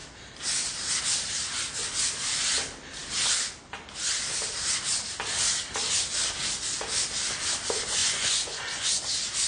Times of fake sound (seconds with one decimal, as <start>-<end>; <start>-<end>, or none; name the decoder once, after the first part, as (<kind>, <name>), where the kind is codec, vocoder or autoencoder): 8.0-9.0 (vocoder, Vocos)